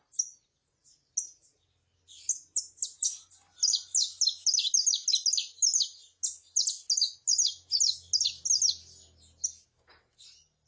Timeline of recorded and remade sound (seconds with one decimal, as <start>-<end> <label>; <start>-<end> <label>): 0.0-10.7 recorded